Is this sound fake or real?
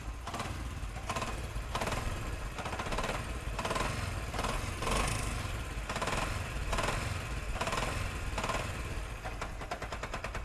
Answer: real